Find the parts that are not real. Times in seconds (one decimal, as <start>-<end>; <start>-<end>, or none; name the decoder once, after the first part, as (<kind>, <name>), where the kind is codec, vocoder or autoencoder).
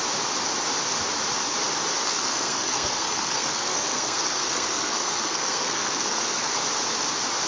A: 2.0-6.5 (codec, SNAC)